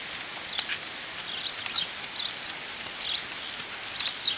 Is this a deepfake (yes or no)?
no